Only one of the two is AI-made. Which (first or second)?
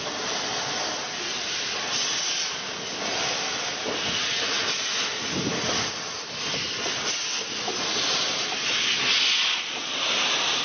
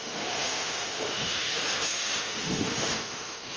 second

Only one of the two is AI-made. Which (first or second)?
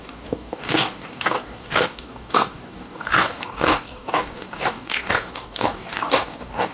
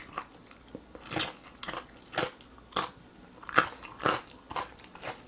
first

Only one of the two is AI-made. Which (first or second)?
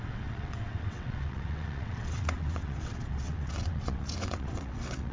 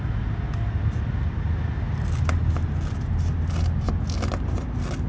first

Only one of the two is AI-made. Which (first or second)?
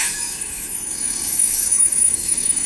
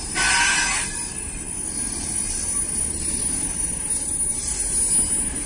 first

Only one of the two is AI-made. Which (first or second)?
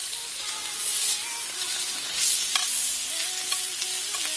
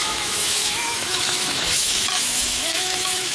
second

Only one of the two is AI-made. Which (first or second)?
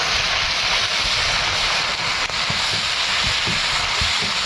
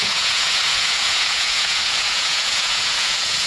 second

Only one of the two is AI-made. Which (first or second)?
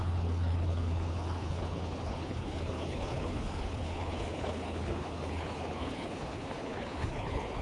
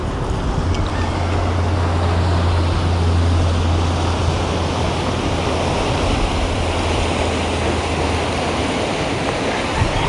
first